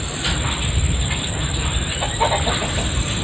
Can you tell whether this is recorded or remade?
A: recorded